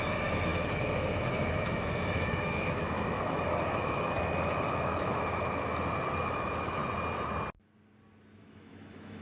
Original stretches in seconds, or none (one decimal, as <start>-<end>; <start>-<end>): 5.7-6.2; 6.8-8.4